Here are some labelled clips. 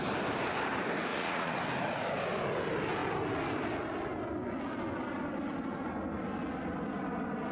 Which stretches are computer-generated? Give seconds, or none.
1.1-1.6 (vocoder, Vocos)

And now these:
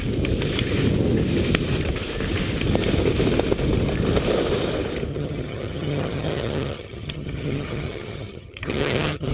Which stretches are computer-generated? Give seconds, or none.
5.1-9.3 (vocoder, HiFi-GAN)